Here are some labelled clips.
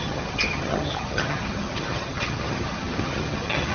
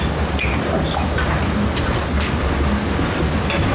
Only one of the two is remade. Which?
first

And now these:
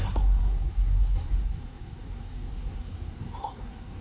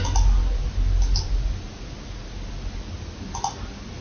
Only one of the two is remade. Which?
first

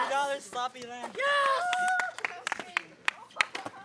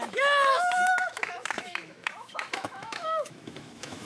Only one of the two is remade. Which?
second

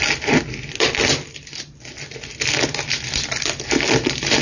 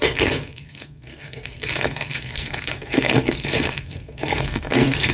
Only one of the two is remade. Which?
second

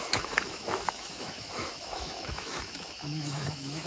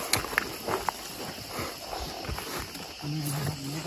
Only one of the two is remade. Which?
first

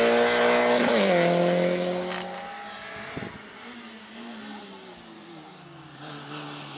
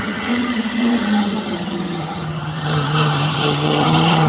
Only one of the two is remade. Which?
second